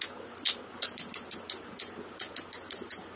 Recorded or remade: recorded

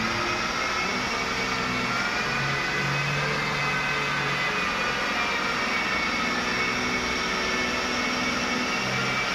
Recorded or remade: recorded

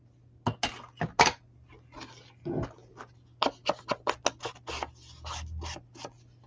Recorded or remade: recorded